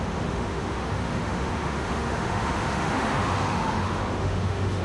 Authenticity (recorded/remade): remade